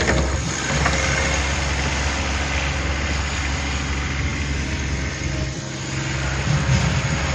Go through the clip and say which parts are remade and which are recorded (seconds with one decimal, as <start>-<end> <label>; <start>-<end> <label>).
0.0-7.3 recorded